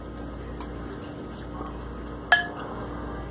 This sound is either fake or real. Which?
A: real